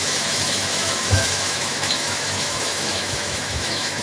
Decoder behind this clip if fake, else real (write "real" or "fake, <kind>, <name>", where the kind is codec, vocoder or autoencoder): fake, autoencoder, DAC-VAE